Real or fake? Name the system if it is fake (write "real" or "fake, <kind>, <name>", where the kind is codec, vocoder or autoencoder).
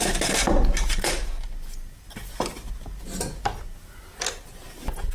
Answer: real